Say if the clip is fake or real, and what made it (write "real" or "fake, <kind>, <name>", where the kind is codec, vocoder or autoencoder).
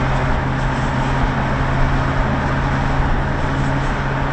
real